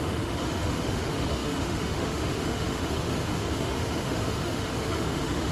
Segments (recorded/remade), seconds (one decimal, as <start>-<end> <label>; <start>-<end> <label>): 0.0-5.5 remade